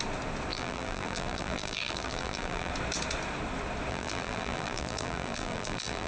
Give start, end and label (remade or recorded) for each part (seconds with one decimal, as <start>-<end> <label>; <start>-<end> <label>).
0.0-0.5 recorded; 0.5-2.7 remade; 2.7-3.9 recorded; 3.9-6.1 remade